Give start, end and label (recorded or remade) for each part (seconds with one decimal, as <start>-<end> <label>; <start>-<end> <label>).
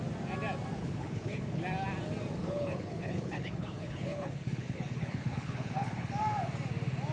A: 0.0-0.8 recorded; 0.8-1.6 remade; 1.6-2.4 recorded; 2.4-6.1 remade; 6.1-7.1 recorded